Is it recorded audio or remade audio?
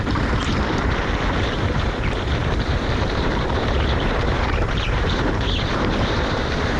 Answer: remade